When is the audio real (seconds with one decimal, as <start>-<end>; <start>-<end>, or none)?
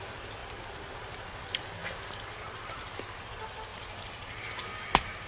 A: 1.8-3.3; 3.7-4.5